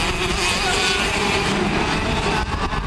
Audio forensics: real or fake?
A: real